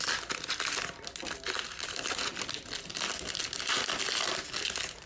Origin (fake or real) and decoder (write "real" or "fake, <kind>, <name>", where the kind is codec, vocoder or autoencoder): real